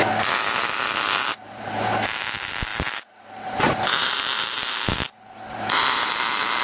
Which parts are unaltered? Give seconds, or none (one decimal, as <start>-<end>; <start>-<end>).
0.0-1.3; 1.9-2.7; 6.1-6.6

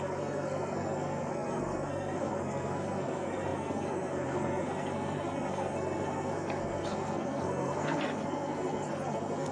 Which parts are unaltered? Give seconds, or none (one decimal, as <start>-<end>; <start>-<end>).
none